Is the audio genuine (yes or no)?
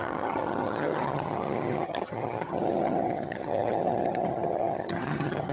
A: no